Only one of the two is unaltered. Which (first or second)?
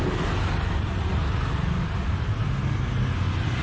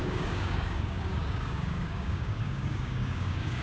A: first